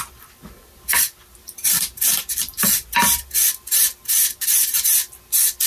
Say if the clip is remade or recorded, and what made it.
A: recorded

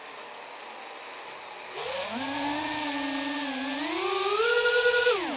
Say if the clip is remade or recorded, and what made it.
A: recorded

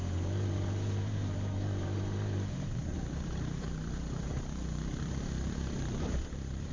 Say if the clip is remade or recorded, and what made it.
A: remade, vocoder, BigVGAN v2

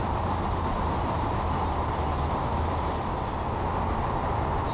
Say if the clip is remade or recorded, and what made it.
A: recorded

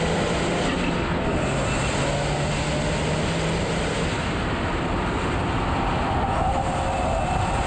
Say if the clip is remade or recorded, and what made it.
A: recorded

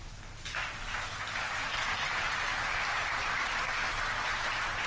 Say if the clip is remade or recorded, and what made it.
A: remade, vocoder, BigVGAN v2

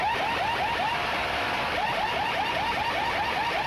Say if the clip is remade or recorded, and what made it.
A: recorded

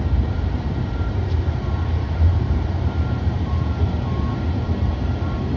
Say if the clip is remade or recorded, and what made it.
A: remade, vocoder, BigVGAN v2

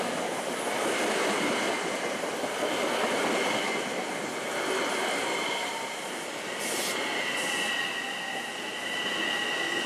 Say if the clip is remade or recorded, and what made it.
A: recorded